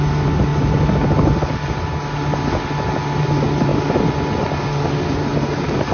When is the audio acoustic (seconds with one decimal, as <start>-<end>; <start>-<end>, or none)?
0.0-5.9